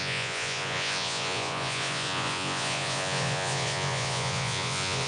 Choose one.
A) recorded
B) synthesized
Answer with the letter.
B